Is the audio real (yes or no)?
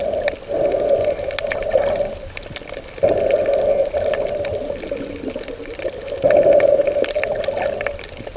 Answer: yes